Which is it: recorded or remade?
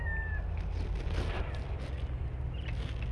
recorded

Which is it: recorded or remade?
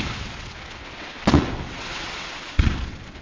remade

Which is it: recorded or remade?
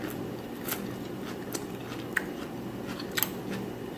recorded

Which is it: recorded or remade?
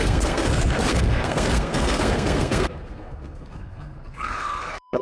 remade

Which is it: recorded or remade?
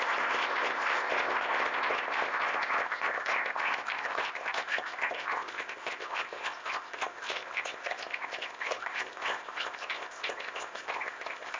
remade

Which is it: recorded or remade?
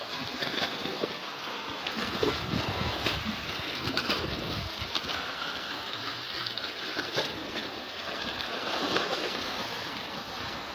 remade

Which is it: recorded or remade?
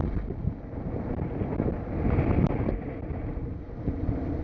recorded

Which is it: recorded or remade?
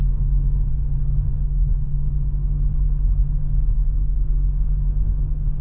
remade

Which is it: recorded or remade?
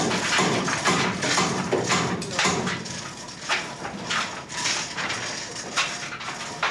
recorded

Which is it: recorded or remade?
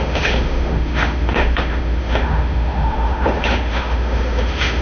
remade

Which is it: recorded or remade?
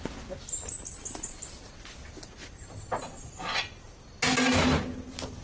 recorded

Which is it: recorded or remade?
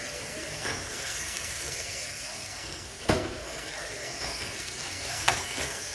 remade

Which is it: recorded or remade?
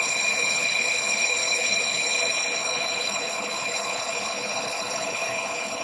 remade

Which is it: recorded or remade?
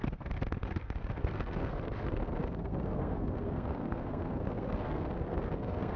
remade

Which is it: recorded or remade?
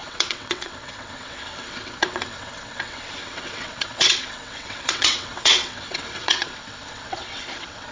remade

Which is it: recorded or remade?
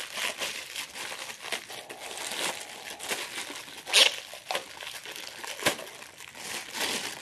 recorded